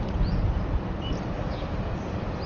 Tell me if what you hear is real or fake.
real